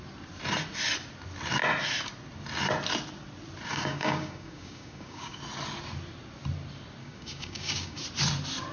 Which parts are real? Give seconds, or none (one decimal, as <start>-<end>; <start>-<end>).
0.0-3.7; 5.4-7.0; 8.0-8.7